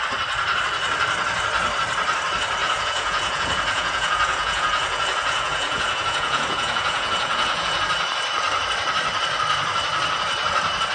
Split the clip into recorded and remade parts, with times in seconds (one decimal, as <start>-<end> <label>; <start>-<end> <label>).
0.0-2.6 recorded; 2.6-7.8 remade; 7.8-10.9 recorded